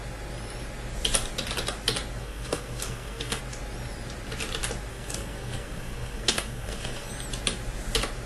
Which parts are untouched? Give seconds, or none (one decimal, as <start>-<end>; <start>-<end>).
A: 0.0-2.2; 3.4-4.9; 7.1-8.3